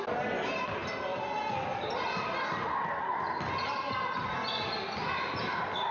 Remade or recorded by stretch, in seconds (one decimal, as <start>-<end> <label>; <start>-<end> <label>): 0.0-5.9 recorded